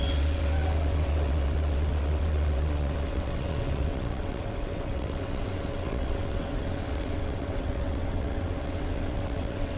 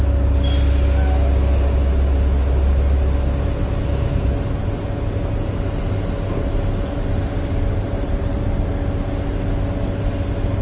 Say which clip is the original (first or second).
second